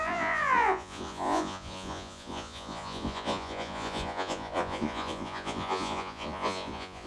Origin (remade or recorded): remade